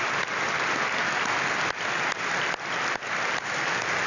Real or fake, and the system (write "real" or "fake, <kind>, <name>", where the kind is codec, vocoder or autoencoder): real